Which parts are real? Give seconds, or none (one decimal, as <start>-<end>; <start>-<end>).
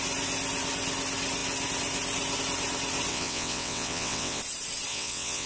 0.0-3.1; 4.4-4.9